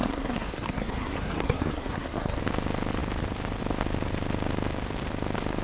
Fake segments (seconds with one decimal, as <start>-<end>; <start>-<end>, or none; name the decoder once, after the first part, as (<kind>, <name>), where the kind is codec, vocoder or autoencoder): 0.0-2.4 (codec, SNAC)